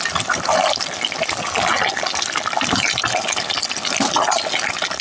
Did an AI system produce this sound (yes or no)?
no